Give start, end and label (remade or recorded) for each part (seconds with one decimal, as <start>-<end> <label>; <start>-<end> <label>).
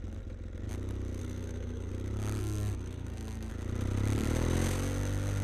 0.0-1.2 recorded; 1.2-1.9 remade; 1.9-2.4 recorded; 2.4-3.5 remade; 3.5-5.4 recorded